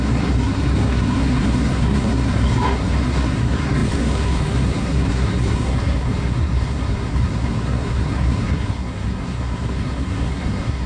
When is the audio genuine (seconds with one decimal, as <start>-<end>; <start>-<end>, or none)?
none